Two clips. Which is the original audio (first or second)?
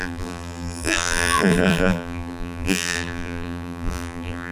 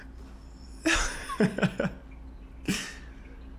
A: second